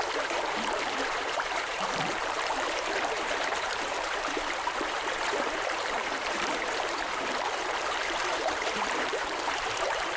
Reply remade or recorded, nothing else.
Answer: remade